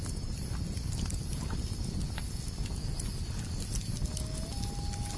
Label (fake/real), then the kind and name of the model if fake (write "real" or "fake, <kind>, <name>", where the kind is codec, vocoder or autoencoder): real